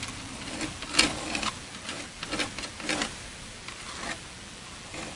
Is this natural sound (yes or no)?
yes